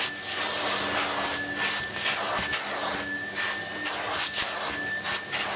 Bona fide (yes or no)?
yes